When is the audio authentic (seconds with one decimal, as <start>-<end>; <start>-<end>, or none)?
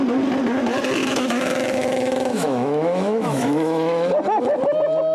0.0-1.0; 4.1-5.1